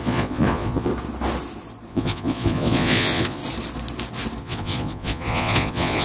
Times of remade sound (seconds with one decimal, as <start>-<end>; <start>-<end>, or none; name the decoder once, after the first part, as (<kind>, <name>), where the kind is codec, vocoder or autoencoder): 0.0-0.9 (vocoder, Vocos); 1.9-3.4; 4.4-6.0